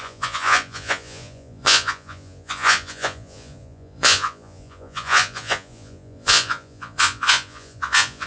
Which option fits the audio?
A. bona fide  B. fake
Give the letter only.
B